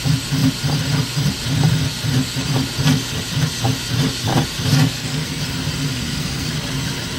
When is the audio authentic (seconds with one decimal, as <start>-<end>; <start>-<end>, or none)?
0.0-4.7; 5.4-5.9; 6.5-7.2